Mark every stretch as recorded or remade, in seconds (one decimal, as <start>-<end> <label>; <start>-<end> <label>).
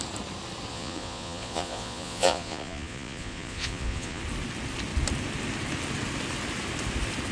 0.0-0.7 recorded; 0.7-4.2 remade; 4.2-7.3 recorded